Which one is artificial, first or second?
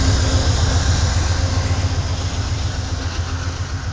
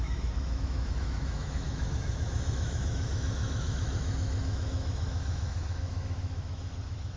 second